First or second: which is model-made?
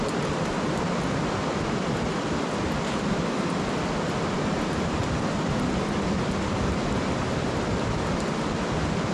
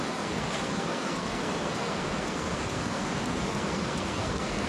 second